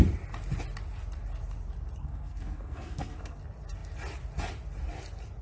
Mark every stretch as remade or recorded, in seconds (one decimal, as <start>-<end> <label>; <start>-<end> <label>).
0.0-2.0 recorded; 2.0-3.4 remade; 3.4-5.4 recorded